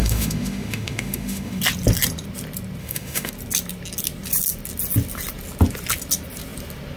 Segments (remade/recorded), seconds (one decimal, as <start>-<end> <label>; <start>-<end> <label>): 0.0-1.6 remade; 1.6-2.8 recorded; 2.8-3.3 remade; 3.3-7.0 recorded